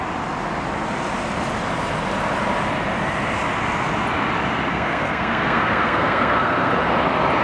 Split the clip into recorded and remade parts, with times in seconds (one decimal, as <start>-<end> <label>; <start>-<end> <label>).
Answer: 0.0-4.7 recorded; 4.7-6.7 remade; 6.7-7.4 recorded